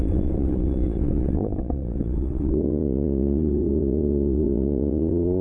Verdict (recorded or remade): remade